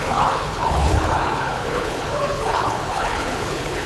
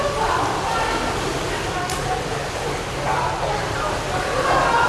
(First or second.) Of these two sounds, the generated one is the first